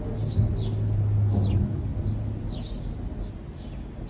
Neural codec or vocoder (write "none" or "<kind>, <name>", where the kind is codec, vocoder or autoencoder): none